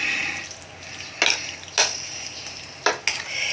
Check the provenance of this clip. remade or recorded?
recorded